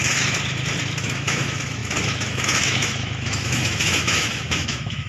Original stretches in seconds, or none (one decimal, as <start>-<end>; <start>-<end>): 0.0-1.0